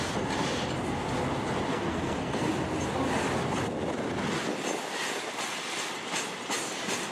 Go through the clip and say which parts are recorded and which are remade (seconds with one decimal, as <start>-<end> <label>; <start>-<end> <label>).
0.0-1.7 recorded; 1.7-2.5 remade; 2.5-7.1 recorded